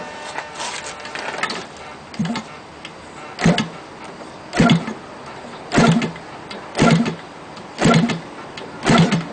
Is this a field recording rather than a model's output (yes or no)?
yes